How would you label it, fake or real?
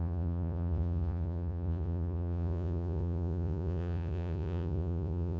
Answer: fake